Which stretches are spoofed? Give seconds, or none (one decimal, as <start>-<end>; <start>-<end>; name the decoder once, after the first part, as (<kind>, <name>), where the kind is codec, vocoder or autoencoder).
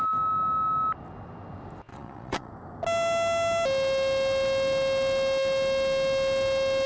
1.9-2.5 (vocoder, Vocos)